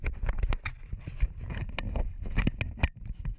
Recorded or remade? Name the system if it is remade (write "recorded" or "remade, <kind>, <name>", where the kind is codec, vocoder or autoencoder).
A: recorded